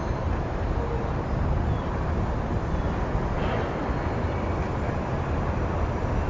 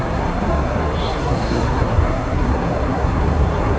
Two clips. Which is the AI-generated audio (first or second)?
second